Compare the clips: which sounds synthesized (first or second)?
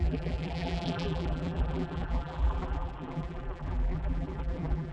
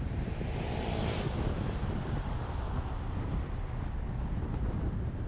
first